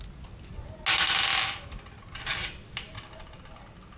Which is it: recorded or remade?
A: recorded